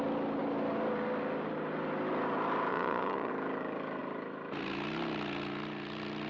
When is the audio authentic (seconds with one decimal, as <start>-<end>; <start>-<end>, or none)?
0.0-2.7; 3.3-6.3